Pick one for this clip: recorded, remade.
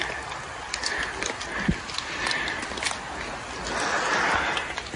recorded